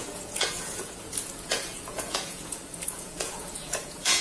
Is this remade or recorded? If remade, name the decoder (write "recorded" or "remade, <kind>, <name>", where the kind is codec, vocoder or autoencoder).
remade, vocoder, Vocos